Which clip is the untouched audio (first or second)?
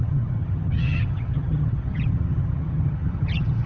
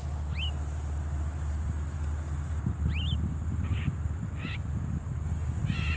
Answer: second